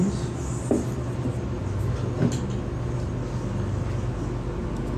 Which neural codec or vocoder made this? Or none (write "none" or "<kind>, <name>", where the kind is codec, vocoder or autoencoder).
none